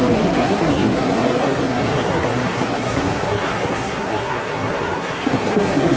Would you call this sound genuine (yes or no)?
no